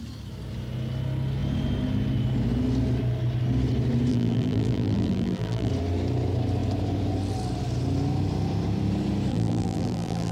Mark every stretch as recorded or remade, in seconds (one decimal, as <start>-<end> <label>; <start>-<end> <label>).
0.0-4.1 recorded; 4.1-5.7 remade; 5.7-9.3 recorded; 9.3-10.3 remade